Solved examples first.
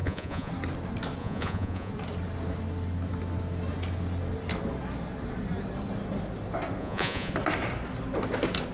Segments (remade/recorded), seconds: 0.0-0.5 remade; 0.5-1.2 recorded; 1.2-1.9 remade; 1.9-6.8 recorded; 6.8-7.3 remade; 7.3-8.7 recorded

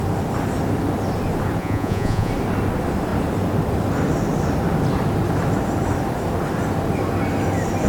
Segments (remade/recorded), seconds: 0.0-1.6 recorded; 1.6-2.3 remade; 2.3-7.9 recorded

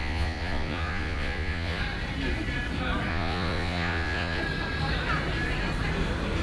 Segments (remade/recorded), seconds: 0.0-1.8 remade; 1.8-3.1 recorded; 3.1-4.4 remade; 4.4-6.4 recorded

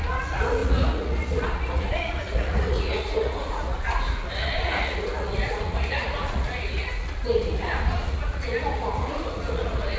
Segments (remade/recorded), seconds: 0.0-10.0 remade

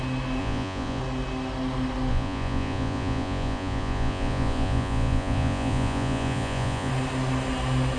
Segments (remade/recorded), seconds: 0.0-0.4 recorded; 0.4-1.0 remade; 1.0-2.1 recorded; 2.1-6.9 remade; 6.9-8.0 recorded

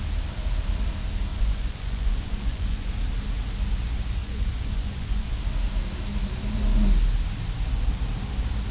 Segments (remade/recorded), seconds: 0.0-1.3 recorded; 1.3-2.9 remade; 2.9-4.2 recorded; 4.2-5.4 remade; 5.4-8.7 recorded

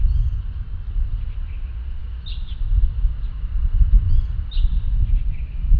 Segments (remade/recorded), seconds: 0.0-5.8 recorded

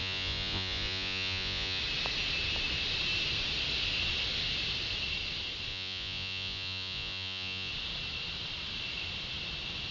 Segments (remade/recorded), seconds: 0.0-1.8 remade; 1.8-5.7 recorded; 5.7-7.7 remade; 7.7-9.9 recorded